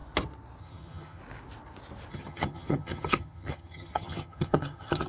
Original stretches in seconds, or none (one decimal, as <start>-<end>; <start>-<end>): 0.0-0.6; 1.2-2.1